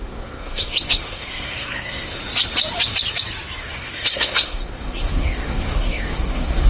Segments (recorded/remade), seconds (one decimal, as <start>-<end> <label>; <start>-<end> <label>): 0.0-2.2 remade; 2.2-3.6 recorded; 3.6-6.7 remade